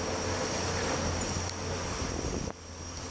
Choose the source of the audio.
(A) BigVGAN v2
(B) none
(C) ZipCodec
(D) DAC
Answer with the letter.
B